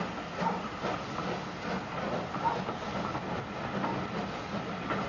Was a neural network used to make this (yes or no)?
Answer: no